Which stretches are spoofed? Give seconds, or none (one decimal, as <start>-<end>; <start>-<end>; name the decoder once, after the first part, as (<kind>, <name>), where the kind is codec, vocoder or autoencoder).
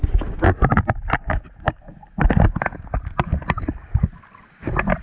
none